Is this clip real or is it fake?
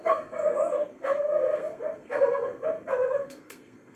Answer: fake